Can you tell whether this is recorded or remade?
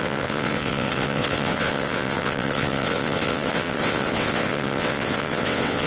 remade